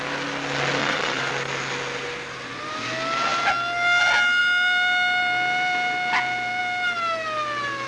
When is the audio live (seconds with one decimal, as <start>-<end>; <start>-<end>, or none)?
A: 0.0-0.8; 1.3-7.9